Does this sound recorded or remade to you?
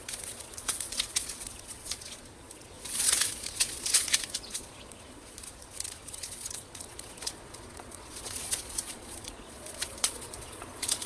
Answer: remade